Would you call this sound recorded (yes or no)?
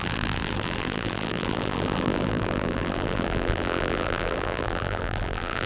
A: no